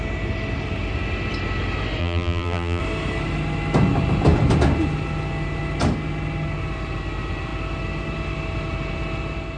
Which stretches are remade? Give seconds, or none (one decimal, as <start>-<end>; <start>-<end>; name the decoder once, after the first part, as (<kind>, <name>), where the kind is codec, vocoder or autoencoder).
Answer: 2.0-2.8 (vocoder, BigVGAN v2)